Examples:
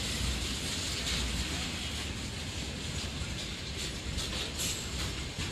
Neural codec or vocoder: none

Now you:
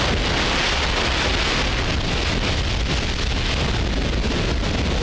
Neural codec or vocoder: none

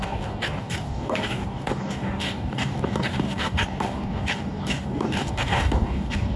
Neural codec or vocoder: codec, DAC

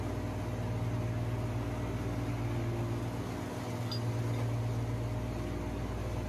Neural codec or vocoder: none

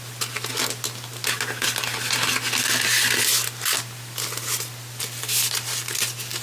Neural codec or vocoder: none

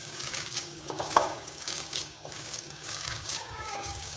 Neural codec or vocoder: codec, DAC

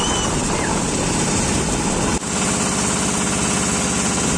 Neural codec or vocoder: none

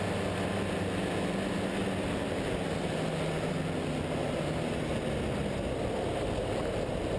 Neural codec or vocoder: none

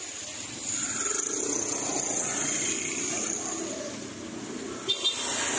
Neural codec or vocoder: none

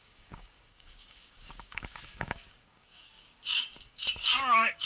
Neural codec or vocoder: codec, DAC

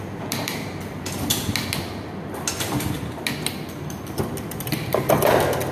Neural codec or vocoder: none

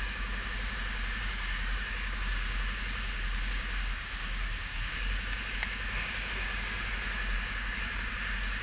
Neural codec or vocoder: codec, DAC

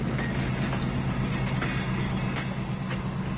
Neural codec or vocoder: none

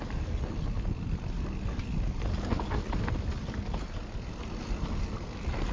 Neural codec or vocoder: none